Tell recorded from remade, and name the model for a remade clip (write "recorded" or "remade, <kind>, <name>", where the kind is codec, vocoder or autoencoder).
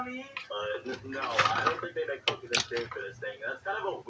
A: recorded